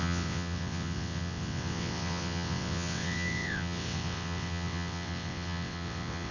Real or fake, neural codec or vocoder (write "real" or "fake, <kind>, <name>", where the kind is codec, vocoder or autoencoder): fake, vocoder, WaveNeXt